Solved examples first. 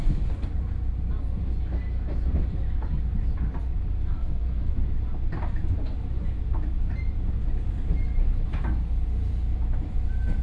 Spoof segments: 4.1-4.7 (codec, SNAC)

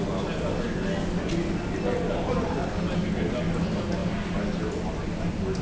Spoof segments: none

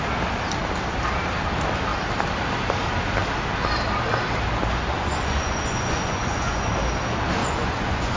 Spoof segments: 4.9-6.7 (vocoder, Vocos); 7.4-8.2